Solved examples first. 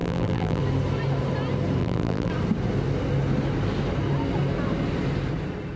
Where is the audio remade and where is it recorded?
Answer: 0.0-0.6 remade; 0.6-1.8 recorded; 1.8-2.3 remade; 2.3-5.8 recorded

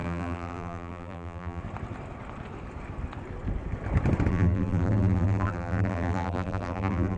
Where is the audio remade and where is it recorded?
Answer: 0.0-1.6 remade; 1.6-4.3 recorded; 4.3-7.2 remade

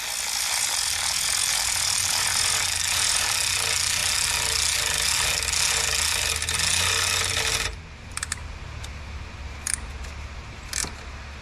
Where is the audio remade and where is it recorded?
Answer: 0.0-11.4 recorded

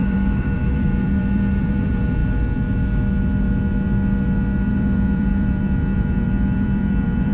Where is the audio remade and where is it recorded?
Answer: 0.0-2.2 remade; 2.2-4.7 recorded; 4.7-7.3 remade

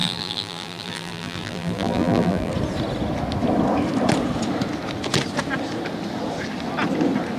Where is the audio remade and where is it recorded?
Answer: 0.0-2.5 remade; 2.5-7.4 recorded

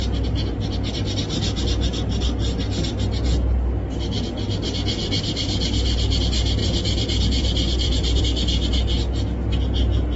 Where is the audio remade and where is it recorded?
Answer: 0.0-6.6 recorded; 6.6-8.2 remade; 8.2-10.2 recorded